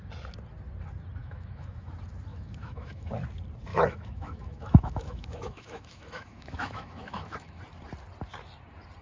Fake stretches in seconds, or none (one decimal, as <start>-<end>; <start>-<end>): 1.2-1.9; 2.3-3.1; 3.7-7.6